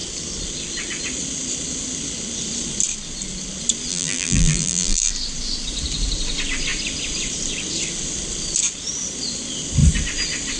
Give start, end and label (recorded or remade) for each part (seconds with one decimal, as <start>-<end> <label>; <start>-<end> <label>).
0.0-3.9 recorded; 3.9-5.1 remade; 5.1-10.6 recorded